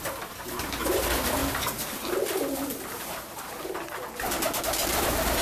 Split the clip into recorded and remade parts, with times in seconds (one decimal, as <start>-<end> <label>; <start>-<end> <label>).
0.0-5.4 recorded